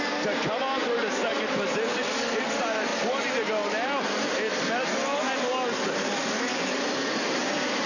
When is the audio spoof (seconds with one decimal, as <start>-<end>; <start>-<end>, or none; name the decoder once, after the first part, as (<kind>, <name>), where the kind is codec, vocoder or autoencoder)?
none